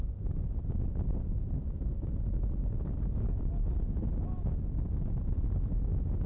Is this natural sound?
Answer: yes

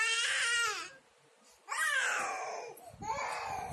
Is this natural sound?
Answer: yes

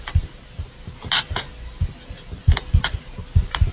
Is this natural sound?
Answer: yes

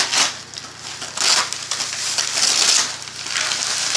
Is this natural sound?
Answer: yes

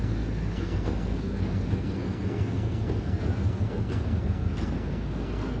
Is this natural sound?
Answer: no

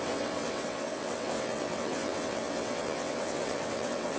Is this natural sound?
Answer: no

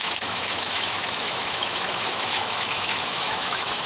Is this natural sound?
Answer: no